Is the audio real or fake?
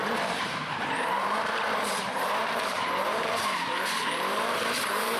fake